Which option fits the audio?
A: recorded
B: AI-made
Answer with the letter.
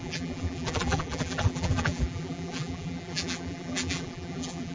B